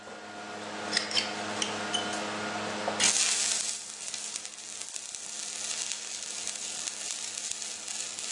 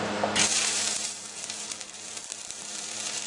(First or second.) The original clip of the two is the first